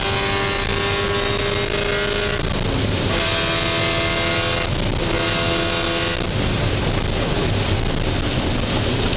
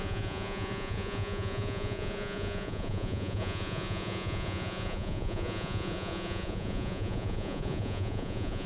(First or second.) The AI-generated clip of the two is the second